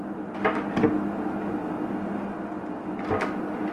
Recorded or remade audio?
recorded